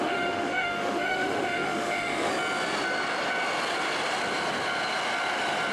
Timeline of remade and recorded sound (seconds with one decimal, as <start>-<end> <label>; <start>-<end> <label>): 0.0-2.3 remade; 2.3-5.7 recorded